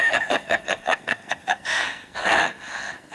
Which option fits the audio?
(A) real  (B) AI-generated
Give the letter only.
B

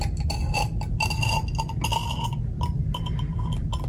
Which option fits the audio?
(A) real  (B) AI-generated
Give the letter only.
A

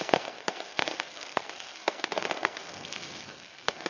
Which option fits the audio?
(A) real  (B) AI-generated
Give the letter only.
B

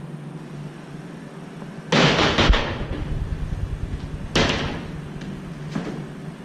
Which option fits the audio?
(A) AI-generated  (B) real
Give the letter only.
B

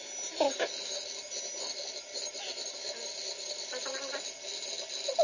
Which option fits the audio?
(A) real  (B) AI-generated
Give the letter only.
A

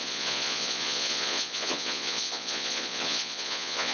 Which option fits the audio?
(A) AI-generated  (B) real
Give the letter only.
A